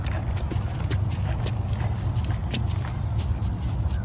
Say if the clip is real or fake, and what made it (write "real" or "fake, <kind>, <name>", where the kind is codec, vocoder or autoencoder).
real